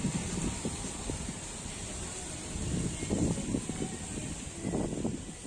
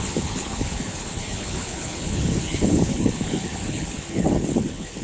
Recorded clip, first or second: first